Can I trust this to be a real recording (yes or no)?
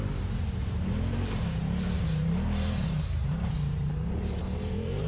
no